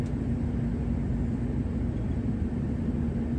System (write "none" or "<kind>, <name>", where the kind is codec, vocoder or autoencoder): none